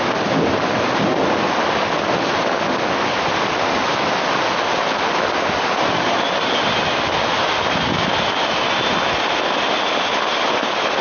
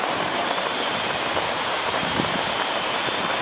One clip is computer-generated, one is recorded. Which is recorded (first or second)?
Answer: first